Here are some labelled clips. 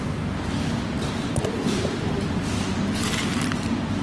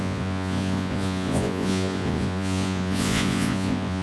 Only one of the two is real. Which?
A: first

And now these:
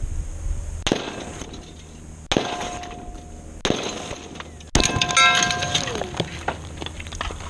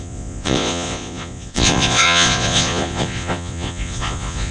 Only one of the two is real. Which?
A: first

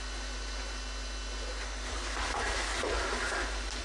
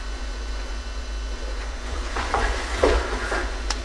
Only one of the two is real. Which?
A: first